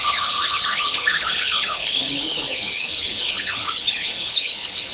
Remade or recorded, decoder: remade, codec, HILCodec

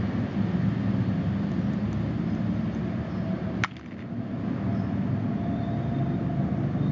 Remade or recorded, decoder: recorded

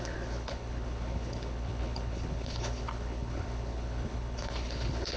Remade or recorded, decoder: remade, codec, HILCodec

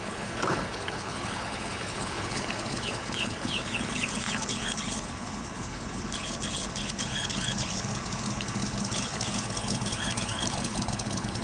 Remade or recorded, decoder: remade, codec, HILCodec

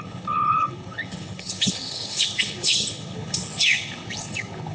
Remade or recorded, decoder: remade, codec, HILCodec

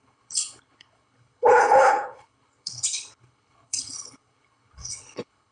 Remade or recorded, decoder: remade, codec, HILCodec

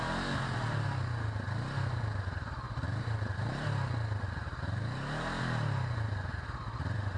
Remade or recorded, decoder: recorded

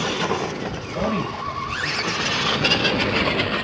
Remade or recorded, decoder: recorded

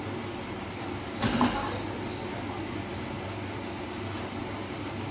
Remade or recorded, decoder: recorded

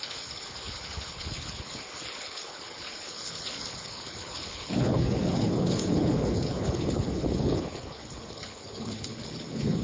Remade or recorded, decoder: remade, codec, HILCodec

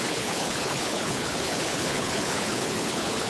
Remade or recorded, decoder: remade, codec, HILCodec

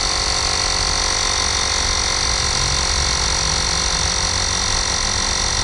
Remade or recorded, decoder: recorded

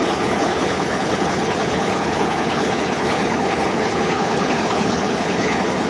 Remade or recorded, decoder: remade, codec, HILCodec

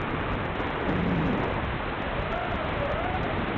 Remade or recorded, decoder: recorded